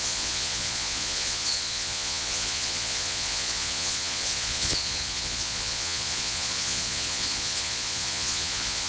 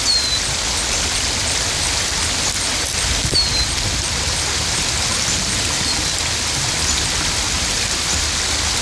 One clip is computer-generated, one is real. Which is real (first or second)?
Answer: second